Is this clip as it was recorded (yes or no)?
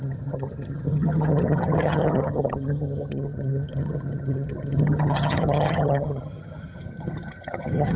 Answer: no